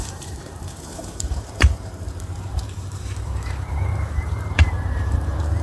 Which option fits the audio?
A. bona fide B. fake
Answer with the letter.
B